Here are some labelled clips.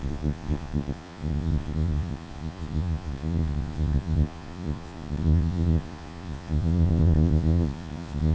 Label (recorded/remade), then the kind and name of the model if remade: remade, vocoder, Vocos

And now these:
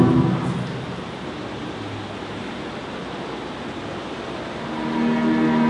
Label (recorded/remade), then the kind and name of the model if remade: recorded